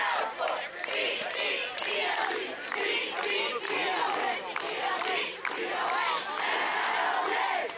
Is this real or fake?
real